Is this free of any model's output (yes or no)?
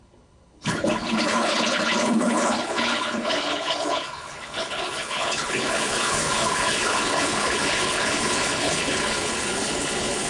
no